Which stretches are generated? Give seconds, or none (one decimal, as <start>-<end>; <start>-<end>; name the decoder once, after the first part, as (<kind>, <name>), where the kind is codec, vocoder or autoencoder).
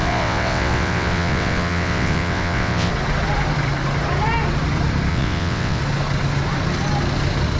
0.0-2.9 (vocoder, WaveNeXt); 5.1-5.8